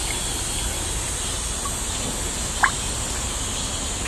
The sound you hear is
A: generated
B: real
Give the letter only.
B